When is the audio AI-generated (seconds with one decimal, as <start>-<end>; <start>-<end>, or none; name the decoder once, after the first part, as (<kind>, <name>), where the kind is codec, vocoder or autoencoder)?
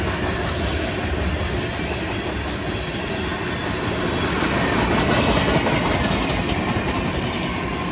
none